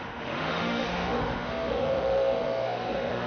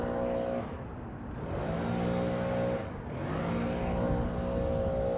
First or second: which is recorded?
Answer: second